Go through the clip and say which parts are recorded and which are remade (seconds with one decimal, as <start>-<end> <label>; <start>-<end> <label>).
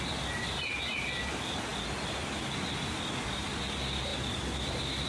0.0-5.1 recorded